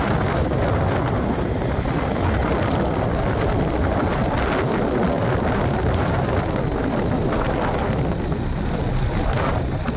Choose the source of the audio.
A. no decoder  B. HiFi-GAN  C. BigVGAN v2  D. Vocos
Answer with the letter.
A